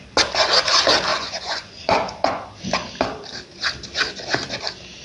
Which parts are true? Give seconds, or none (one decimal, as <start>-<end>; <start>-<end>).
0.0-1.1; 2.7-5.0

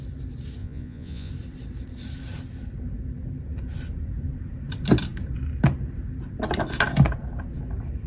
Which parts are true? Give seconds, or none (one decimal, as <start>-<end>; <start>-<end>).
0.0-0.6; 1.3-8.1

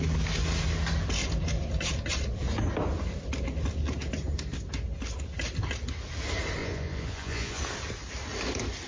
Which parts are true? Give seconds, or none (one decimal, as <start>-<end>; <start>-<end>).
0.0-6.6; 7.6-8.9

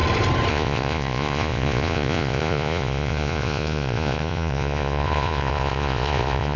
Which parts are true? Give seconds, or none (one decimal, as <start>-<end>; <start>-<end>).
0.0-0.5

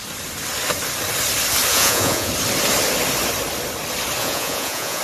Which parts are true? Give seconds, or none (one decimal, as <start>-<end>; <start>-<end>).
0.0-1.7; 2.3-4.2